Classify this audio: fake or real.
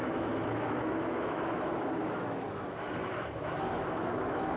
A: fake